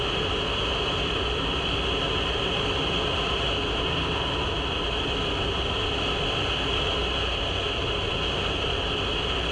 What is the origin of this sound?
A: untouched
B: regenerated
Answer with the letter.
A